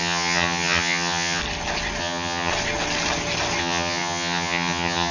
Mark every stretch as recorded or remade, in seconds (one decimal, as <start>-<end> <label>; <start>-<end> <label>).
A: 0.0-1.4 remade; 1.4-2.0 recorded; 2.0-2.5 remade; 2.5-3.6 recorded; 3.6-5.1 remade